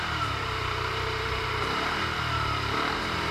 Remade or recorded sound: remade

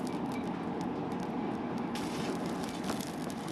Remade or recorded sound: recorded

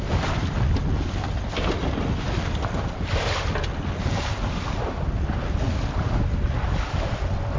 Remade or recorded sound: recorded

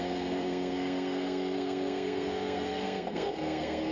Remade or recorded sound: remade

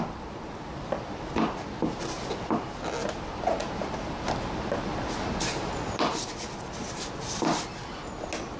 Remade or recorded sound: recorded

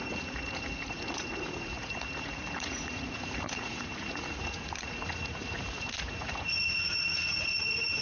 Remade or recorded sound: remade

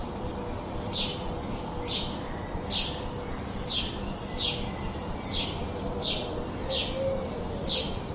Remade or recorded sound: recorded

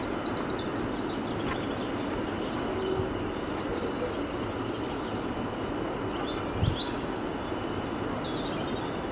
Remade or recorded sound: recorded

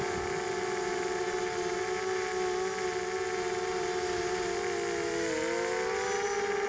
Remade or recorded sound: recorded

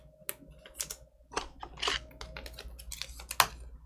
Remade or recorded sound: recorded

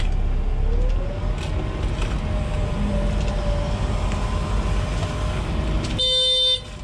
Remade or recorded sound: recorded